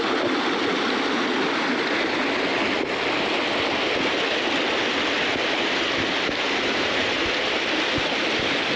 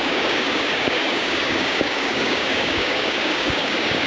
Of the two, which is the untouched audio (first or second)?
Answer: first